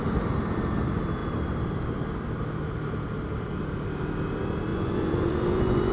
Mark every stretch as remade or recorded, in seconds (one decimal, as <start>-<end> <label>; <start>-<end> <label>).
0.0-4.7 recorded; 4.7-5.9 remade